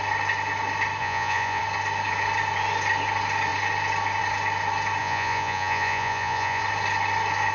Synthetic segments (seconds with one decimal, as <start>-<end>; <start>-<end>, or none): 1.0-1.6; 5.0-6.6